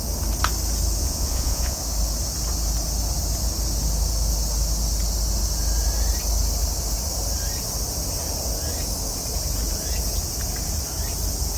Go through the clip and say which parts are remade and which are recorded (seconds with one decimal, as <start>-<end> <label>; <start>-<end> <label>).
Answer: 0.0-1.0 recorded; 1.0-1.8 remade; 1.8-11.6 recorded